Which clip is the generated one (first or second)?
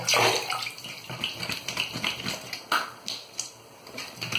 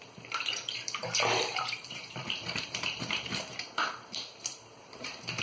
second